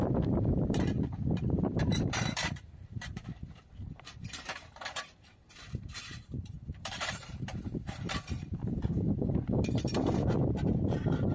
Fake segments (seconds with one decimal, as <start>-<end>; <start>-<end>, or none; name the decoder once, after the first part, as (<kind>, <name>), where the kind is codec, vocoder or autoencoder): 0.0-3.2 (vocoder, BigVGAN v2); 4.3-11.3